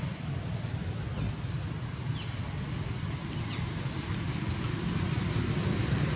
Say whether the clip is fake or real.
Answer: real